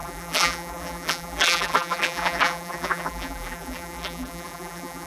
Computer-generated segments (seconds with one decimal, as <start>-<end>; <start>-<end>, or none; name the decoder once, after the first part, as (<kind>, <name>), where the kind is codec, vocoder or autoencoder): 0.0-5.1 (vocoder, BigVGAN v2)